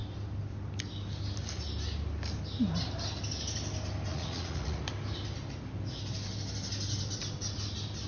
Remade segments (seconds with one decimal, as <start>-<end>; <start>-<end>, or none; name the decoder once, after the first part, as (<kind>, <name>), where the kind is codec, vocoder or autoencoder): 4.1-4.8 (vocoder, Vocos)